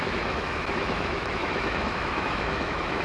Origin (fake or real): fake